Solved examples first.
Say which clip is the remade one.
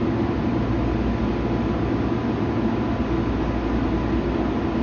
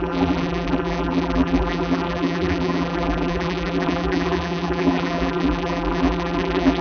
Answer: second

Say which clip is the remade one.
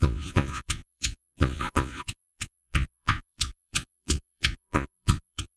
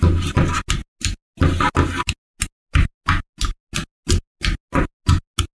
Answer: first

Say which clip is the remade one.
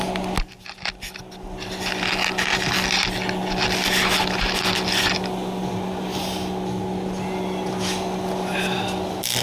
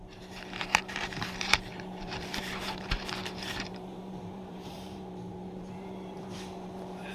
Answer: second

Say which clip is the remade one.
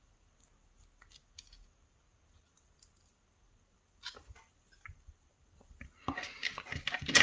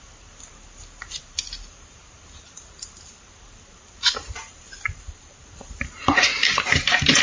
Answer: second